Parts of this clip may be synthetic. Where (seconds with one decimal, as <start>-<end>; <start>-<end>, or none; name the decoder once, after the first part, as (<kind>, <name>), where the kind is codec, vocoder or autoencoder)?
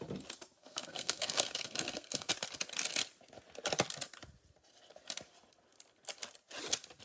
0.6-2.3 (codec, SNAC)